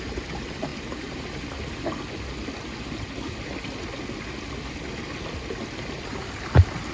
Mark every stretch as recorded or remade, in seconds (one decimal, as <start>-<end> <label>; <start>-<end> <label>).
0.0-6.9 recorded